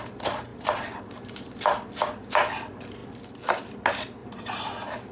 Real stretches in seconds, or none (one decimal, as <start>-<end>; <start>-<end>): 0.0-0.5; 1.0-4.2